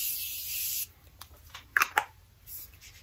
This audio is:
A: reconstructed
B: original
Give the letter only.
B